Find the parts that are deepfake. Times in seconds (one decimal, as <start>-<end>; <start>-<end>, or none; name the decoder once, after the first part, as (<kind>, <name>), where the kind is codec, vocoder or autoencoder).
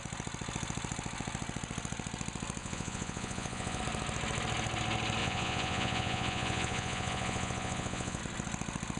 2.6-3.8 (vocoder, Vocos); 5.2-8.2